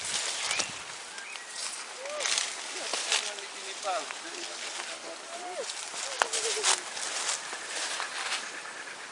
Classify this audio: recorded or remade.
recorded